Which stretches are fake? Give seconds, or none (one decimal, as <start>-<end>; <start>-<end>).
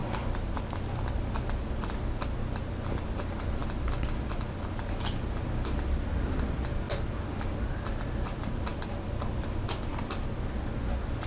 none